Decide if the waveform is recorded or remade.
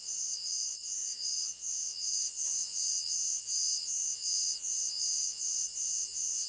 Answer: remade